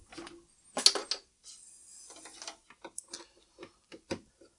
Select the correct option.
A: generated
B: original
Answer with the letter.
B